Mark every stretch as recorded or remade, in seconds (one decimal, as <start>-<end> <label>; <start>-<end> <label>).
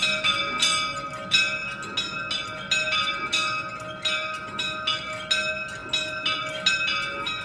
0.0-7.4 recorded